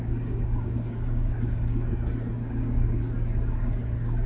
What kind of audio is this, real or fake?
fake